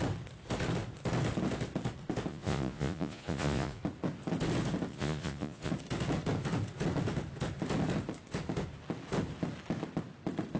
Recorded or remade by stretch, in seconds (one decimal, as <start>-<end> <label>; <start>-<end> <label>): 0.0-2.3 recorded; 2.3-3.8 remade; 3.8-4.9 recorded; 4.9-5.7 remade; 5.7-10.6 recorded